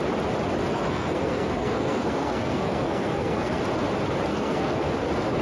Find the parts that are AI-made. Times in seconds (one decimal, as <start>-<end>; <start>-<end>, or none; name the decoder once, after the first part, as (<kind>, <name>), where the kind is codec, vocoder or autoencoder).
0.7-3.6 (codec, SNAC); 4.3-4.9